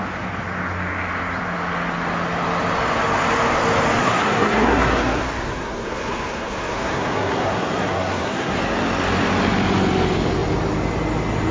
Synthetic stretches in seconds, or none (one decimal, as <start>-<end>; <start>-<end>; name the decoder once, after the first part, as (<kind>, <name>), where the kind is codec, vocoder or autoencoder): 4.0-8.6 (codec, SNAC)